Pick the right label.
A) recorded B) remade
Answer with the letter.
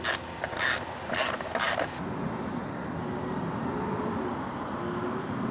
A